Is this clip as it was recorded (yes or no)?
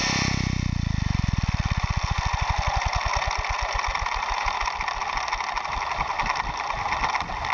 yes